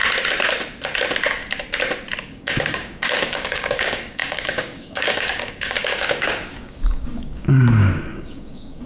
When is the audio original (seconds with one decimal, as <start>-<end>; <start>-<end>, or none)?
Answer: 0.0-2.2